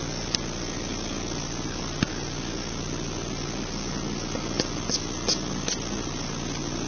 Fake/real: real